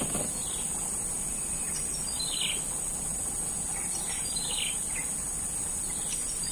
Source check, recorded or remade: recorded